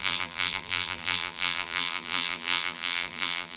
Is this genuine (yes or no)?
no